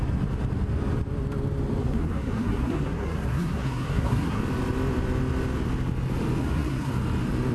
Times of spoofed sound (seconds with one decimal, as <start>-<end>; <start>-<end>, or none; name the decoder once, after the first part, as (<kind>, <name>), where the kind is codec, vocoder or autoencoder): 1.8-4.4 (codec, SNAC); 6.4-6.9